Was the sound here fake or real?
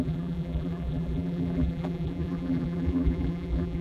fake